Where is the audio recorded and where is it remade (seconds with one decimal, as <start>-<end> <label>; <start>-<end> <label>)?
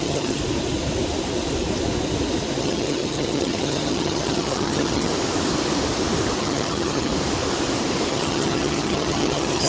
0.0-0.4 remade; 0.4-2.6 recorded; 2.6-5.1 remade; 5.1-6.4 recorded; 6.4-7.1 remade; 7.1-8.1 recorded; 8.1-9.7 remade